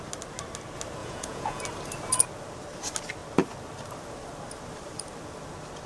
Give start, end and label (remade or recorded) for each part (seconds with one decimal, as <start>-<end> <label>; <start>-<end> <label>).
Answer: 0.0-1.0 recorded; 1.0-1.6 remade; 1.6-5.9 recorded